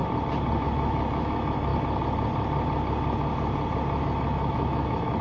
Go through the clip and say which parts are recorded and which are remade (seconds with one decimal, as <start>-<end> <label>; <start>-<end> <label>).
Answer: 0.0-0.6 recorded; 0.6-1.7 remade; 1.7-4.0 recorded; 4.0-5.2 remade